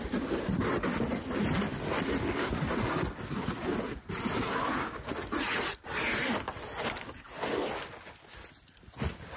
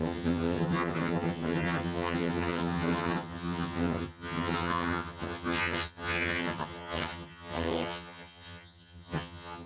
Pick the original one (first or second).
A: first